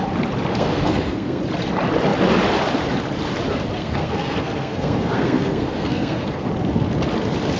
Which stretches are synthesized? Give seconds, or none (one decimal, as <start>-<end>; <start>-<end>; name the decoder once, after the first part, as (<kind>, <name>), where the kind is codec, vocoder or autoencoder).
0.5-1.4 (codec, SNAC); 3.8-6.5